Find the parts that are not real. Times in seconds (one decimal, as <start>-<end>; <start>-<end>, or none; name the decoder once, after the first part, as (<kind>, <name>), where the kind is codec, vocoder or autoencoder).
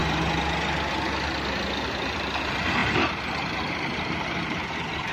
2.8-4.6 (vocoder, BigVGAN v2)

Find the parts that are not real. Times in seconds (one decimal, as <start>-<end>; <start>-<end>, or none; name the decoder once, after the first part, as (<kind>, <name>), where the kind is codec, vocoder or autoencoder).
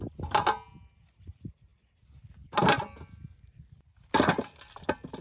none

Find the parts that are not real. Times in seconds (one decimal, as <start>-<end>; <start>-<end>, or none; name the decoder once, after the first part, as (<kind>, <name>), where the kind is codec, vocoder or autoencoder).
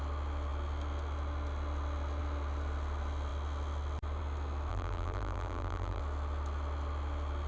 4.7-6.0 (vocoder, BigVGAN v2)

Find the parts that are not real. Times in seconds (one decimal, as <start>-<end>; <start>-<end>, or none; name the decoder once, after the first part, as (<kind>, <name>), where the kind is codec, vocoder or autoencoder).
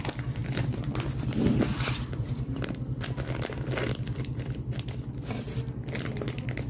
1.7-2.3 (vocoder, BigVGAN v2)